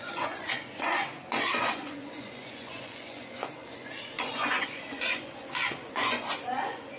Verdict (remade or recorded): remade